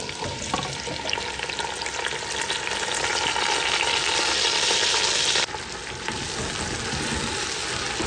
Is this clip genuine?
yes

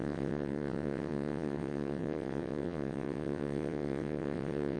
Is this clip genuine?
no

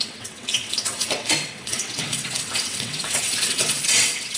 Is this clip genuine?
no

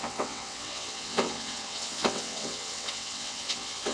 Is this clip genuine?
no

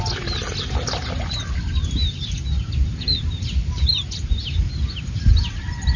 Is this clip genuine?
yes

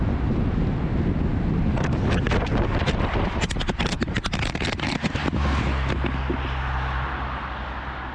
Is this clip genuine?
yes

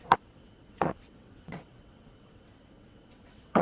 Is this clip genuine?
no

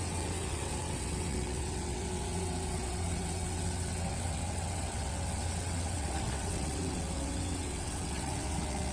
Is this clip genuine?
no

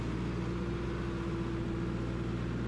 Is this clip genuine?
yes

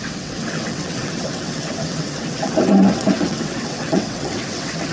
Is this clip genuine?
no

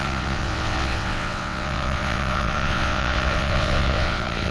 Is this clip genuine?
no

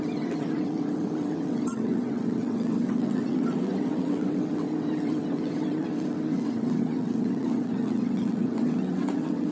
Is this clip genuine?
no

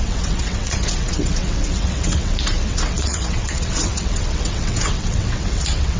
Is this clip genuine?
no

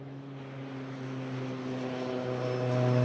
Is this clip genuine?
yes